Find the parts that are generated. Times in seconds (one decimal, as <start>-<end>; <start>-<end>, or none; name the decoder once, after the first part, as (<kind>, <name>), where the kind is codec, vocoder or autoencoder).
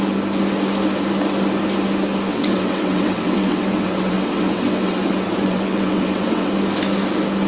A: 2.3-6.5 (vocoder, WaveNeXt)